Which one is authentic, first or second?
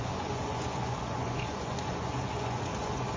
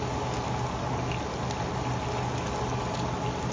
second